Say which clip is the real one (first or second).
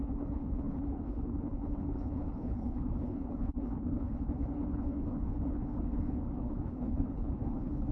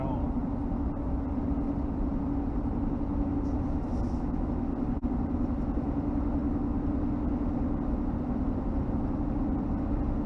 second